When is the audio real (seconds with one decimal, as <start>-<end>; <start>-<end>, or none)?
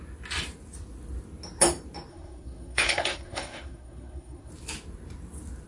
0.0-2.1; 4.5-5.7